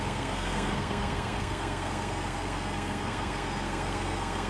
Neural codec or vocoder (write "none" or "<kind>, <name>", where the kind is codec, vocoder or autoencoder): codec, SNAC